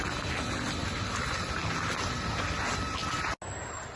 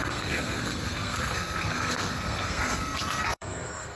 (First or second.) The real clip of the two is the first